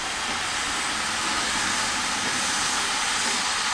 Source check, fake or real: real